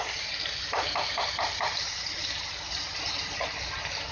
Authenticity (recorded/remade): recorded